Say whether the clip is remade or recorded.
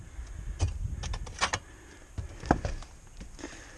recorded